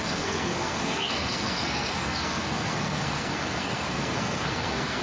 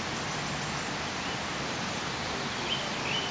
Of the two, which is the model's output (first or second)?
first